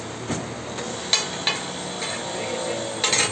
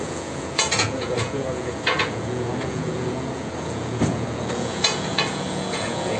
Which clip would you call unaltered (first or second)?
first